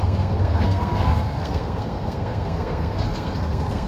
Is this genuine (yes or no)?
no